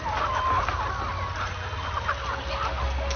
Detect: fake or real real